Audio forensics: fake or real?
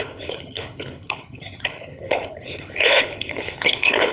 fake